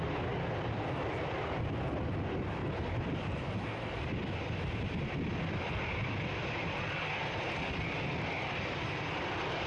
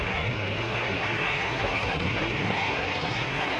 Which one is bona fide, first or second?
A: first